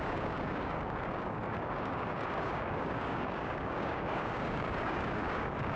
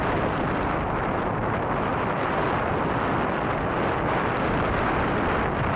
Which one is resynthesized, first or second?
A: first